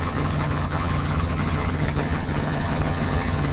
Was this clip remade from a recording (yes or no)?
yes